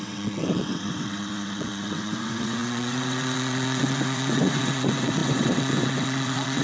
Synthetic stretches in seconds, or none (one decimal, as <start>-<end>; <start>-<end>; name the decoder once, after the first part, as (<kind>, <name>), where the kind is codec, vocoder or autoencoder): 0.0-6.6 (vocoder, WaveNeXt)